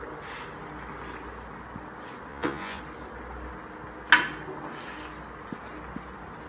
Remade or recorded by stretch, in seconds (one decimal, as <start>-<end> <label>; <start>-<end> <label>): 0.0-2.3 recorded; 2.3-2.8 remade; 2.8-6.5 recorded